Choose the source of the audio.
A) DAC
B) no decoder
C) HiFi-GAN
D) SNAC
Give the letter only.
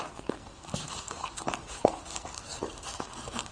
D